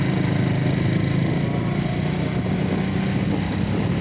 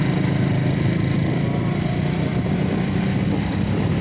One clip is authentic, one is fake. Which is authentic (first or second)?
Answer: first